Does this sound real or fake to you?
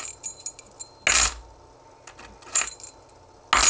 real